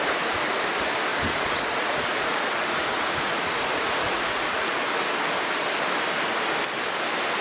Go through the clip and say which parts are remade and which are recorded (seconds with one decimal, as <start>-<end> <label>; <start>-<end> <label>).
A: 0.0-1.1 recorded; 1.1-4.8 remade; 4.8-7.4 recorded